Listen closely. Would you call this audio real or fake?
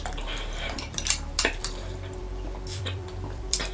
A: fake